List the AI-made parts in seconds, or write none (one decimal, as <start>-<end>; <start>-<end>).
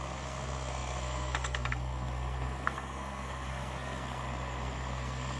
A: 0.0-5.4